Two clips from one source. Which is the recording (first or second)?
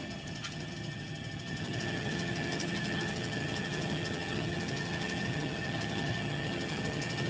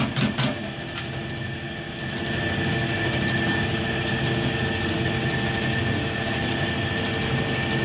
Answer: second